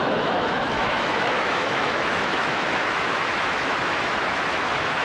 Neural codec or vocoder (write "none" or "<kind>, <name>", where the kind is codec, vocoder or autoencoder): autoencoder, DAC-VAE